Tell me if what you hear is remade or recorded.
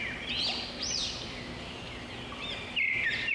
remade